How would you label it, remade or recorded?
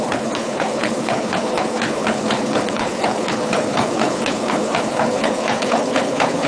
remade